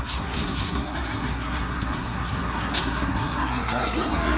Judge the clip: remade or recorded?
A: remade